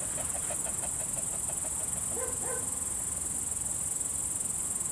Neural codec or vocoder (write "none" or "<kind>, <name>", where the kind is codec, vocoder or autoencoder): none